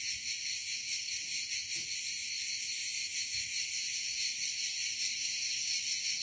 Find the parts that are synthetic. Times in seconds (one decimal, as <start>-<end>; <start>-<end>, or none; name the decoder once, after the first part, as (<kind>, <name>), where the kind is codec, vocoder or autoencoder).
none